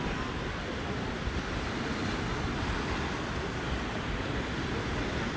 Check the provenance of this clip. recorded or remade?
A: recorded